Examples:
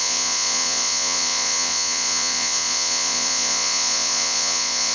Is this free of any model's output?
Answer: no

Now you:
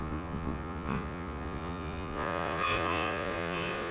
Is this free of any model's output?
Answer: no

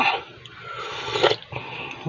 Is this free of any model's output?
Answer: yes